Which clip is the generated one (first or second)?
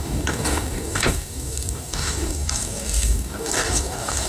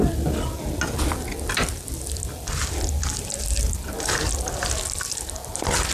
first